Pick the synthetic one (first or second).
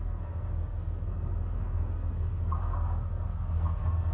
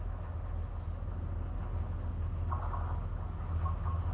first